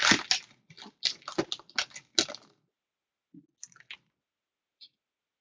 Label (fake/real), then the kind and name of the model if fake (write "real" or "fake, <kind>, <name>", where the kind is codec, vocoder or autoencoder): real